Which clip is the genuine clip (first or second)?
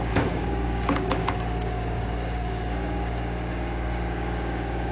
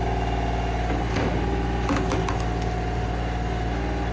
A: second